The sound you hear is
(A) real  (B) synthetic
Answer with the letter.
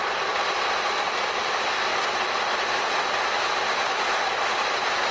A